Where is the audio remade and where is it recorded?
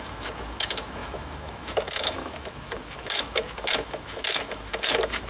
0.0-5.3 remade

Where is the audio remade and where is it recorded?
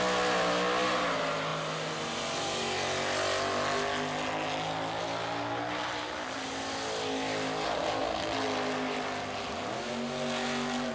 0.0-10.9 recorded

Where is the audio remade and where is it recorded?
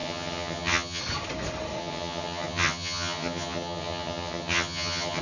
0.0-1.0 remade; 1.0-1.8 recorded; 1.8-5.2 remade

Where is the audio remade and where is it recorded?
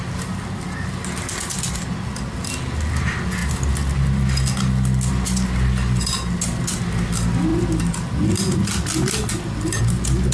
0.0-10.3 recorded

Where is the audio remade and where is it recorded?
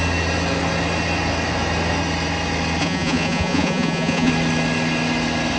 0.0-2.8 recorded; 2.8-4.3 remade; 4.3-5.6 recorded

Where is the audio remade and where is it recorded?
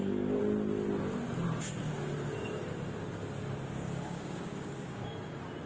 0.0-0.4 remade; 0.4-3.7 recorded; 3.7-5.0 remade; 5.0-5.7 recorded